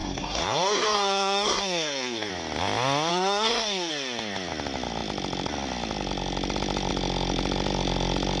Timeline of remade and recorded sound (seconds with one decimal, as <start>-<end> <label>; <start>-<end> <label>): 0.0-2.3 remade; 2.3-3.1 recorded; 3.1-3.9 remade; 3.9-8.4 recorded